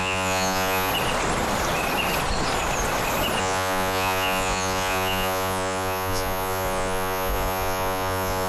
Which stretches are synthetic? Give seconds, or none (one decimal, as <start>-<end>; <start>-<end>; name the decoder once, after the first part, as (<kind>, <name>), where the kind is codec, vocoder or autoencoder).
0.0-0.9 (vocoder, Vocos); 3.4-8.5